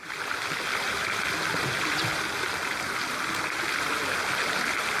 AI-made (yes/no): no